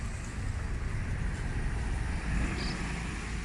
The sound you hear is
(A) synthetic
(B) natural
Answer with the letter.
B